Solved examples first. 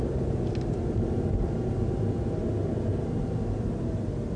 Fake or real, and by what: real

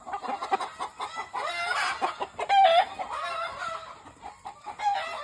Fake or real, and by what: real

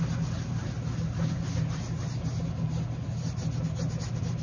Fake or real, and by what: real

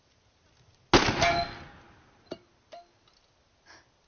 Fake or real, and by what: real